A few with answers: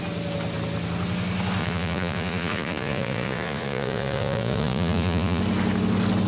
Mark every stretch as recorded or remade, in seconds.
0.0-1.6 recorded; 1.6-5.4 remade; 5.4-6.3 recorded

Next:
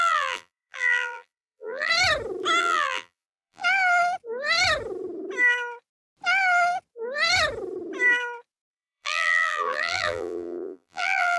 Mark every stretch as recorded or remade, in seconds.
0.0-1.9 remade; 1.9-2.6 recorded; 2.6-3.6 remade; 3.6-8.7 recorded; 8.7-11.4 remade

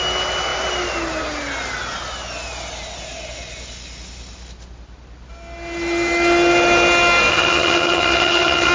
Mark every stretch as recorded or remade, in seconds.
0.0-7.3 recorded; 7.3-8.7 remade

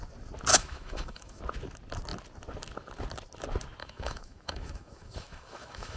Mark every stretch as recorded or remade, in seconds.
0.0-0.5 recorded; 0.5-1.4 remade; 1.4-3.8 recorded; 3.8-6.0 remade

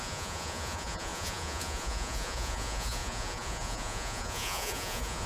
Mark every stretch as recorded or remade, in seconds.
0.0-5.3 remade

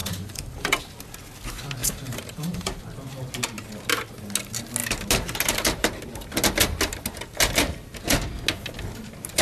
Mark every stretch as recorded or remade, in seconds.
0.0-0.8 remade; 0.8-1.8 recorded; 1.8-2.8 remade; 2.8-9.4 recorded

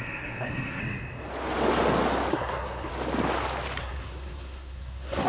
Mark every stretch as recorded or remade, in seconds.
0.0-0.8 remade; 0.8-2.3 recorded; 2.3-2.9 remade; 2.9-3.8 recorded; 3.8-5.3 remade

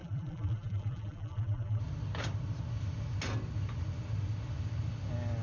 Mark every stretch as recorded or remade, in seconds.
0.0-1.8 remade; 1.8-5.4 recorded